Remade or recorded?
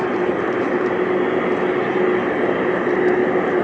recorded